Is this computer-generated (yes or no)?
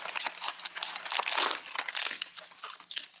no